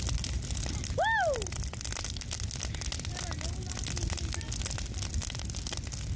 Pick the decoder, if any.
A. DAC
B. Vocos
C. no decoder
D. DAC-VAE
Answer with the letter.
C